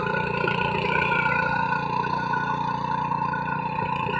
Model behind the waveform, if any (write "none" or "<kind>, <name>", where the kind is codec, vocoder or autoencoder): vocoder, BigVGAN v2